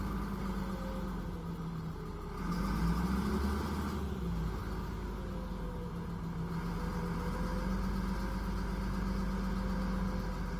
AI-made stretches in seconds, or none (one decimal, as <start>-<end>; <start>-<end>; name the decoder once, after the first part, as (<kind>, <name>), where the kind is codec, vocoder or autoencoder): 4.6-5.9 (codec, DAC)